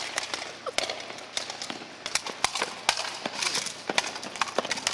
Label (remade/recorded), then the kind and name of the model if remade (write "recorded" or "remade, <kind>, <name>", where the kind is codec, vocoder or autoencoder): recorded